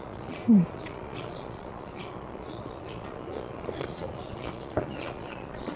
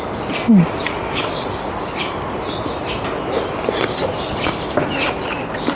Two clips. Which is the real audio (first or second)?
second